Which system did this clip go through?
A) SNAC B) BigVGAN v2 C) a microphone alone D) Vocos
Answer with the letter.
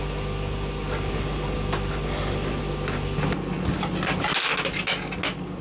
C